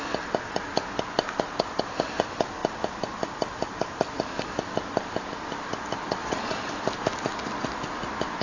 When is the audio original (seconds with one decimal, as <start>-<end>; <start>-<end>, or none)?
0.0-6.2; 6.7-8.4